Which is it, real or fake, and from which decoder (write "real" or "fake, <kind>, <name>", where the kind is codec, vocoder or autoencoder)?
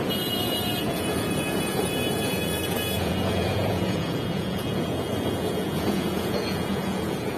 fake, vocoder, Vocos